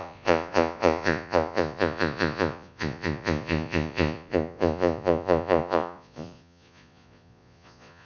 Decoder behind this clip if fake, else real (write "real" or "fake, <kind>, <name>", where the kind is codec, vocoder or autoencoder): fake, vocoder, Vocos